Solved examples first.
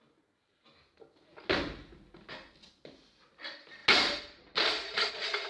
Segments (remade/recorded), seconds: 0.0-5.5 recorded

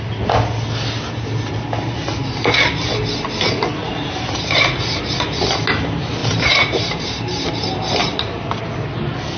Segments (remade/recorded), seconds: 0.0-3.8 recorded; 3.8-5.1 remade; 5.1-6.2 recorded; 6.2-8.6 remade; 8.6-9.4 recorded

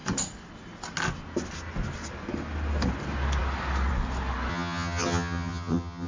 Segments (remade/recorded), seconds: 0.0-4.5 recorded; 4.5-6.1 remade

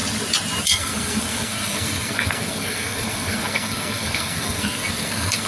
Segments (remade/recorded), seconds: 0.0-0.6 recorded; 0.6-5.5 remade

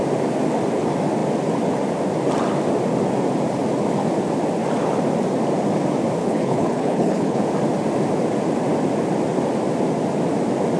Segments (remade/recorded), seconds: 0.0-6.2 recorded; 6.2-7.4 remade; 7.4-10.8 recorded